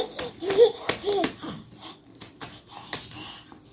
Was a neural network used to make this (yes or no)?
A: no